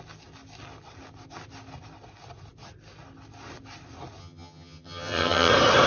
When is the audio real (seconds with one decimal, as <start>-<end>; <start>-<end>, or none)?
0.0-4.2; 5.5-5.9